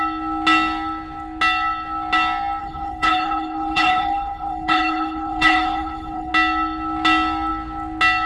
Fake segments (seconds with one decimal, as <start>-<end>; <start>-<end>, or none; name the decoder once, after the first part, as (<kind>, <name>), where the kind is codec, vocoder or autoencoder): 2.6-6.3 (codec, HILCodec)